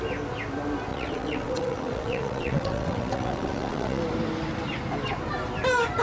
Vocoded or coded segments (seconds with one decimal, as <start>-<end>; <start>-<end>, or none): 0.9-4.0